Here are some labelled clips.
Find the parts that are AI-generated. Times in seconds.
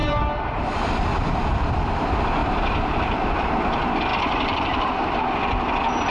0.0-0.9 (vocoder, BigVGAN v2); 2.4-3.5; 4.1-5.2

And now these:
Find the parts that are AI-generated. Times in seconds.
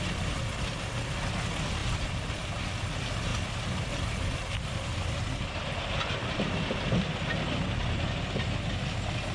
1.8-2.7 (vocoder, BigVGAN v2); 3.3-7.3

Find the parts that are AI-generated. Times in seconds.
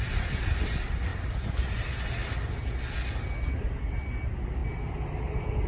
1.1-1.8 (vocoder, BigVGAN v2); 2.2-3.1; 4.6-5.2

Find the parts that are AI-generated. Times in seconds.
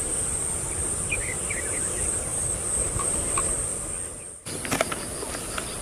0.0-2.3 (vocoder, BigVGAN v2); 3.1-3.7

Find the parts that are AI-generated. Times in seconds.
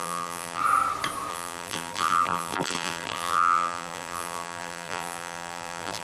0.0-0.6 (vocoder, BigVGAN v2); 1.3-6.0